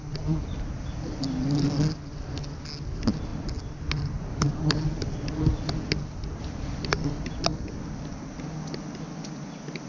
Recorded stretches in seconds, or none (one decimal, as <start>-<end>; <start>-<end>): 0.0-3.3; 4.5-9.9